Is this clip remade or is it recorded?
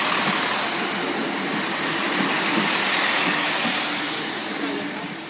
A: recorded